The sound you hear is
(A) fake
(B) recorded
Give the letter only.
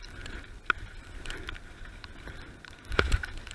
B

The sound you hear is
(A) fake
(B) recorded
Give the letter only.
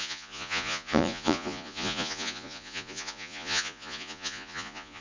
A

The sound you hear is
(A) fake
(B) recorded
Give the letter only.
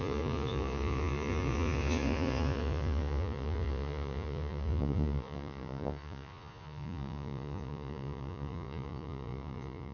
A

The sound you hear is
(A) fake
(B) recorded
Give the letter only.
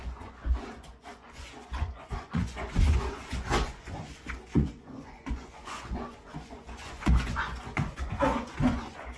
A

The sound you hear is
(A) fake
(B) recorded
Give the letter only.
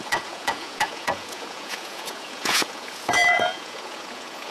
A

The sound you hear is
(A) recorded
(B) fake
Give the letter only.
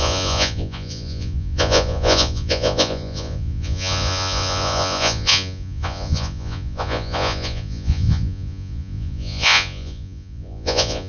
B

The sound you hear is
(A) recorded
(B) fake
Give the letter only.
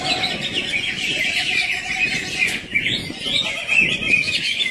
B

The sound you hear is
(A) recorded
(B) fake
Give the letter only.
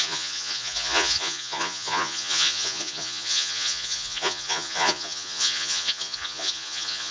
B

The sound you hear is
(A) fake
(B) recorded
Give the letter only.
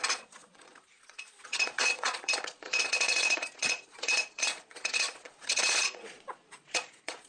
A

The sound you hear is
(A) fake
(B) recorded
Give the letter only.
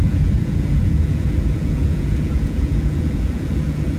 A